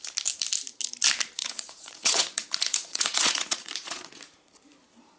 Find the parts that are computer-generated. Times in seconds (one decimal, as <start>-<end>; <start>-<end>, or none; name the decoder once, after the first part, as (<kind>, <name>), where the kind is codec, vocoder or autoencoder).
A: 1.4-4.5 (vocoder, Vocos)